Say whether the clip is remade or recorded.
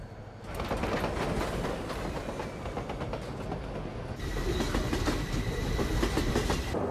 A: recorded